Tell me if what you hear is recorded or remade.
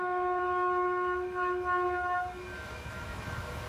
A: remade